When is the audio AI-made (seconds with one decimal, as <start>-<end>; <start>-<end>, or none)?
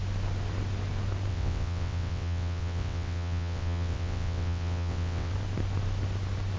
1.3-5.3